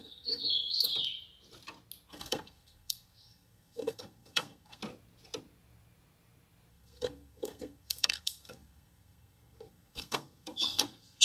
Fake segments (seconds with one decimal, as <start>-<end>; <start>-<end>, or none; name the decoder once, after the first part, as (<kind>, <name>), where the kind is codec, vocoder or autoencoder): 0.0-0.9 (codec, SNAC); 2.1-4.8; 6.7-11.2